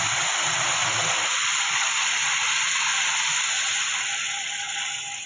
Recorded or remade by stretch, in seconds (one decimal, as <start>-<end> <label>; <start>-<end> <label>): 0.0-5.3 recorded